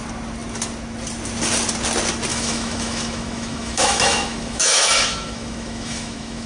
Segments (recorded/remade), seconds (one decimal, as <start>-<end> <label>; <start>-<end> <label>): 0.0-2.3 recorded; 2.3-6.5 remade